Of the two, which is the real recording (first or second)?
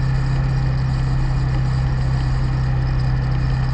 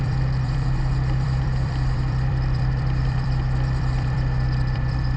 first